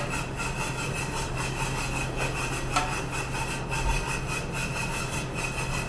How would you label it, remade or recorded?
recorded